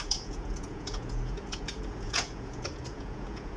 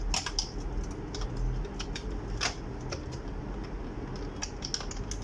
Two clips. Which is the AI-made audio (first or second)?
first